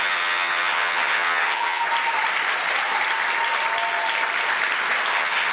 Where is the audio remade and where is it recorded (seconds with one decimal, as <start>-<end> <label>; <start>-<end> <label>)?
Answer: 0.0-1.8 remade; 1.8-5.1 recorded; 5.1-5.5 remade